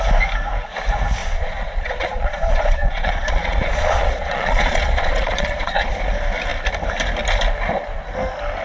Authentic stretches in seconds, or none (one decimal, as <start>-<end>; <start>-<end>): 0.0-1.2; 5.9-8.6